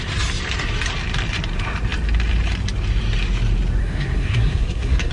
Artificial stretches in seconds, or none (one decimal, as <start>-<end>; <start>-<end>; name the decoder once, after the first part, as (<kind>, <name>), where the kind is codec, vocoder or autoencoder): 3.8-5.1 (codec, SNAC)